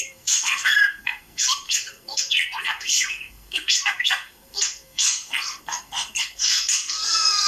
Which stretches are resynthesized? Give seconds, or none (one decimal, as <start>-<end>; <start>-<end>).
0.0-7.5